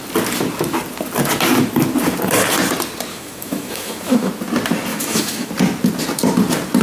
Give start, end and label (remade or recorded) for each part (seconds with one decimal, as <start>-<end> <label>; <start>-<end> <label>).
0.0-3.1 recorded; 3.1-4.3 remade; 4.3-4.9 recorded; 4.9-5.5 remade; 5.5-6.8 recorded